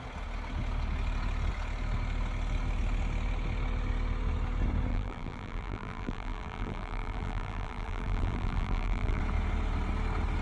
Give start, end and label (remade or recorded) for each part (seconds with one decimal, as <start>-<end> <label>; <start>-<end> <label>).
0.0-4.9 recorded; 4.9-9.2 remade; 9.2-10.4 recorded